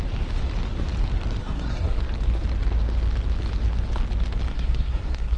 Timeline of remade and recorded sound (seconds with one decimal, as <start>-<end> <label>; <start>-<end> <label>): 0.0-1.4 recorded; 1.4-2.0 remade; 2.0-4.5 recorded; 4.5-5.4 remade